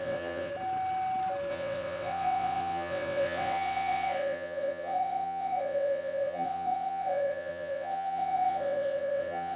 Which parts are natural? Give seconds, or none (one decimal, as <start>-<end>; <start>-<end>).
0.5-1.5